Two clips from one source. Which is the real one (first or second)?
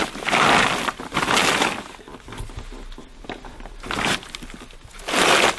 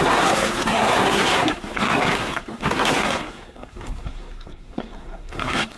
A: first